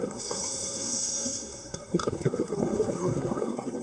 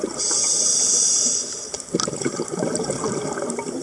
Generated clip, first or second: first